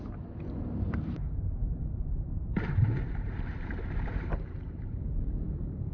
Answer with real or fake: fake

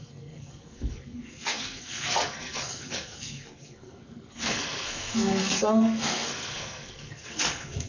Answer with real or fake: fake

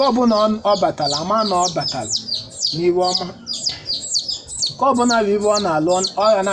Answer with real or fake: real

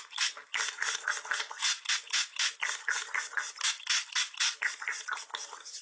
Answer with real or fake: real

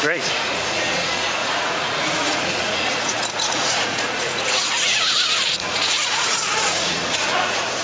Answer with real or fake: fake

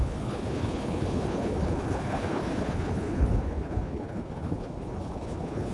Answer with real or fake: fake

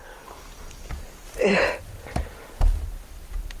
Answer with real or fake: real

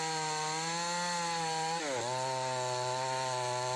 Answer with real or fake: real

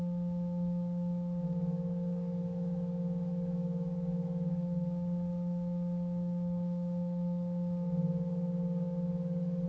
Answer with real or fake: fake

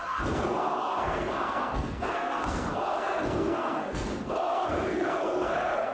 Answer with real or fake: fake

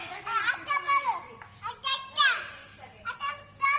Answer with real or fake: real